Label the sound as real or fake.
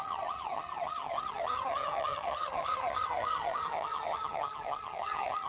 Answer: fake